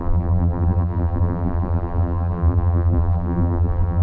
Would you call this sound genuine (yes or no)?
no